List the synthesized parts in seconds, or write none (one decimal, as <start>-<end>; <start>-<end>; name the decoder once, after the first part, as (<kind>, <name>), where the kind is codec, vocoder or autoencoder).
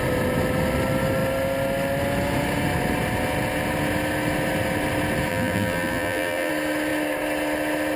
5.3-6.5 (vocoder, BigVGAN v2)